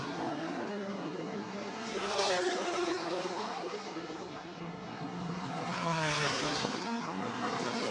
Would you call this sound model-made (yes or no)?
yes